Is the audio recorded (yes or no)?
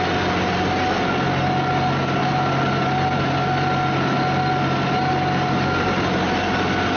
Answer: yes